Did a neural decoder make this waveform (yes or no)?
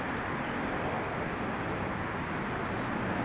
no